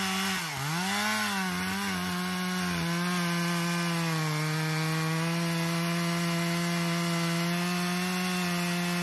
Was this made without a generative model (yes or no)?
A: yes